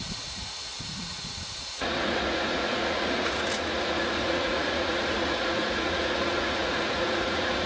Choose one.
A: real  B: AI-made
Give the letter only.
B